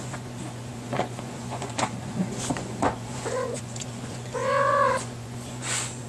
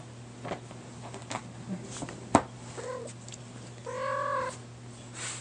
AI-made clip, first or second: first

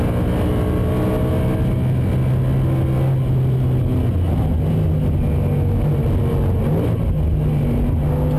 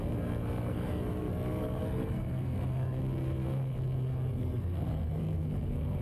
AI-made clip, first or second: second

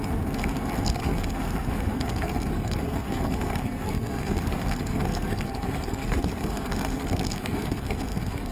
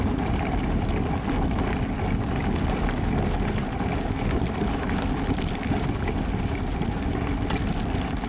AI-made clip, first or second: first